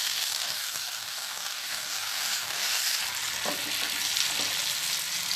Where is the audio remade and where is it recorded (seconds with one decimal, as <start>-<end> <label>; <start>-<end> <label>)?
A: 0.0-3.0 remade; 3.0-5.4 recorded